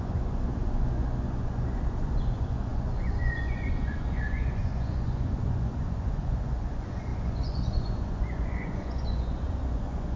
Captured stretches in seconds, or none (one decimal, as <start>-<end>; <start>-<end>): none

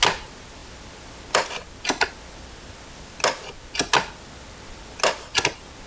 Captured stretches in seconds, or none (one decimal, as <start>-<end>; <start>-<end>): 0.0-5.9

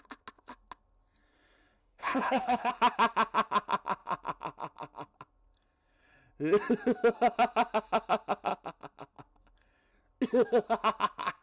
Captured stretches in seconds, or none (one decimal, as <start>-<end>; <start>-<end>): 0.0-1.8; 2.7-11.4

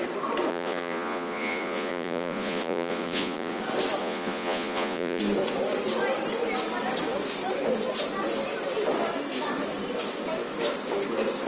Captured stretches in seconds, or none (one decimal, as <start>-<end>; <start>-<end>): 0.0-0.5; 3.6-4.0; 5.2-11.5

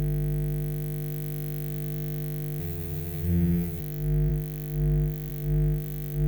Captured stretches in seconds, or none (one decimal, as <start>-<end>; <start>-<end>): 0.0-2.6; 3.8-6.3

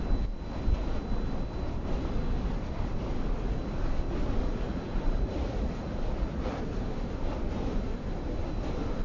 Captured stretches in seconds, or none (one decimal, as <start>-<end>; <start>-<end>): 0.0-4.4; 6.6-9.0

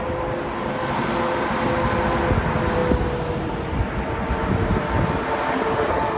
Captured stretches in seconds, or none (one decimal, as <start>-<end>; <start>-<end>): 0.0-6.2